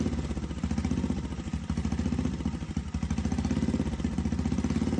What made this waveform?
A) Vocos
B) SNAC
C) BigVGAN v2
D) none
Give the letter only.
D